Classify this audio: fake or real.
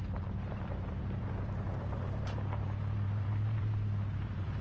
fake